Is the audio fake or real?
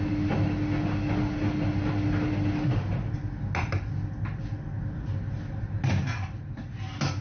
real